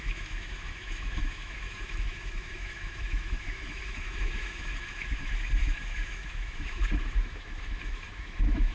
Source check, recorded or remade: remade